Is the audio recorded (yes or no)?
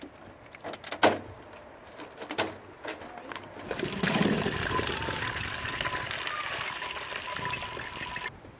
yes